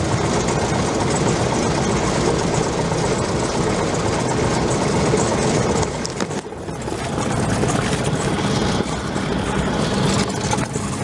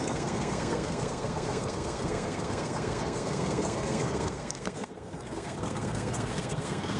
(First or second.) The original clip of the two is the first